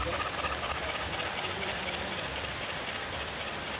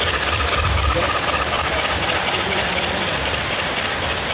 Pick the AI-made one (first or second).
second